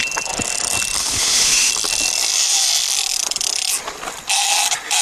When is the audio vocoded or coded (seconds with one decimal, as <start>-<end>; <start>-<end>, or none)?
1.0-1.7